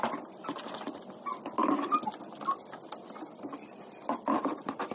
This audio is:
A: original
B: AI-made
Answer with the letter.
A